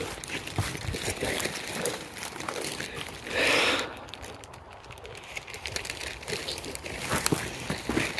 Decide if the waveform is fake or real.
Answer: fake